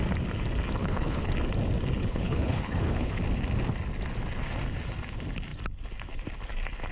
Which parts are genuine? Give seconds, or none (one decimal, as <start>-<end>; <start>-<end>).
0.0-0.8; 1.3-2.0; 3.1-6.9